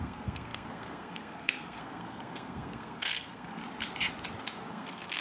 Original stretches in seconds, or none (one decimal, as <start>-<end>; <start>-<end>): 3.6-4.7